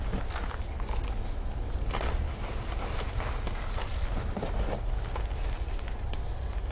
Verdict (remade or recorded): recorded